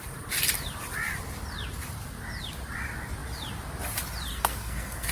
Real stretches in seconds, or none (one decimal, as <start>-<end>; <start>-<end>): 0.0-4.3